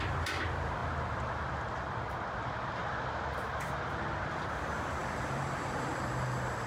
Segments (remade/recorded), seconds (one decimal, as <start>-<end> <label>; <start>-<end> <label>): 0.0-5.0 recorded; 5.0-5.9 remade; 5.9-6.7 recorded